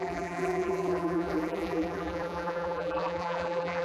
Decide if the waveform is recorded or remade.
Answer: remade